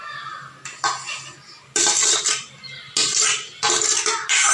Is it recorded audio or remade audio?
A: recorded